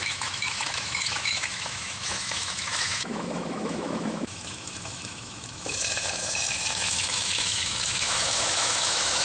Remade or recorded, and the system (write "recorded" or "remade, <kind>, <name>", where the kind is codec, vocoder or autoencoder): remade, autoencoder, DAC-VAE